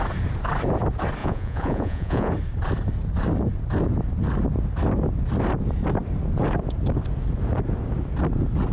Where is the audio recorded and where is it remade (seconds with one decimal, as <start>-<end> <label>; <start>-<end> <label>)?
0.0-1.2 recorded; 1.2-2.3 remade; 2.3-8.7 recorded